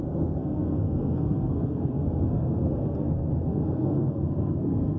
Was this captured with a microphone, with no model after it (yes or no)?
no